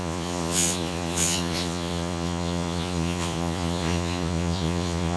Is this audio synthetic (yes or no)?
yes